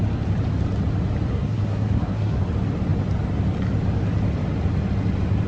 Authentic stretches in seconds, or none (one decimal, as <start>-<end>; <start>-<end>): 0.0-1.3; 2.4-5.5